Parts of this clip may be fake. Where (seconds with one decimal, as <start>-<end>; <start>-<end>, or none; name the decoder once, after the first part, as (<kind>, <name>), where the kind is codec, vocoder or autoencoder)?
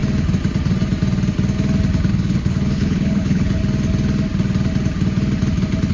2.1-3.6 (codec, HILCodec)